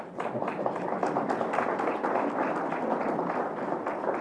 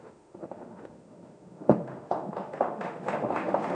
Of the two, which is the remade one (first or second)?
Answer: second